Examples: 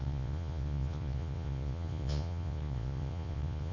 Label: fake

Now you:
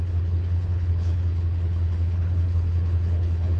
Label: fake